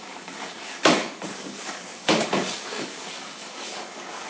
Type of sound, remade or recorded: remade